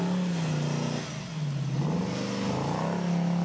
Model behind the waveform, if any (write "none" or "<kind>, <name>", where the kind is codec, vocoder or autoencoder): none